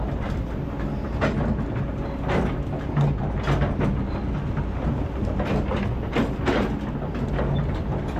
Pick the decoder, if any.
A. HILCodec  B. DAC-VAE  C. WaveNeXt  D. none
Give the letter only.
D